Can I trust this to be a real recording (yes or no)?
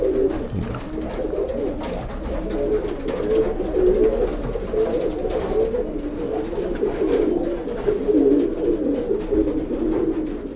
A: yes